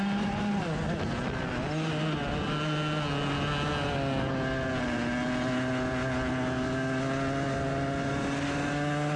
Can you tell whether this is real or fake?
real